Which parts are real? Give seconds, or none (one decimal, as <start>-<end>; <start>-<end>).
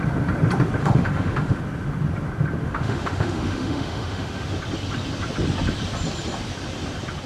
0.0-0.8; 1.6-2.6; 4.5-7.3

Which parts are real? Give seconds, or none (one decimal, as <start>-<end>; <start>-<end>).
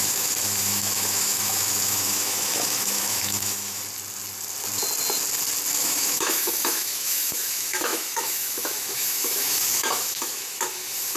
3.8-5.7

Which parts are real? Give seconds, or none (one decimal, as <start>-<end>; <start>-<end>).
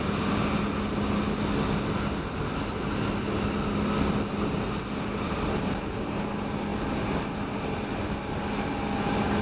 0.0-9.4